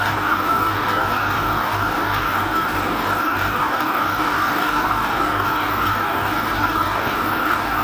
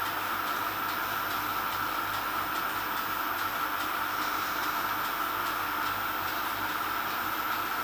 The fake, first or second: first